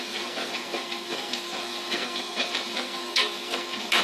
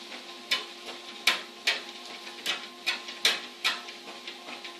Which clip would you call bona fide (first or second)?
second